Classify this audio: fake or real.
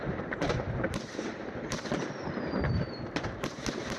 fake